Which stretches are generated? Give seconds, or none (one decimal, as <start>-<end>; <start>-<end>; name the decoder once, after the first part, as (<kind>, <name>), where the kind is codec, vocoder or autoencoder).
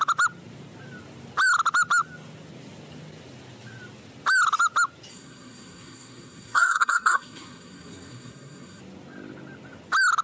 5.1-8.8 (codec, SNAC)